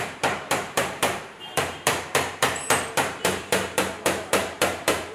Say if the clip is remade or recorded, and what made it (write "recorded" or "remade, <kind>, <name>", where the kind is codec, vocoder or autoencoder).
remade, vocoder, BigVGAN v2